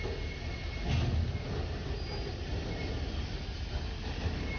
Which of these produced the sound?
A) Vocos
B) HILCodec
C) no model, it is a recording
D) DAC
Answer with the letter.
C